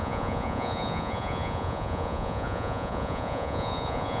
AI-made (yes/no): yes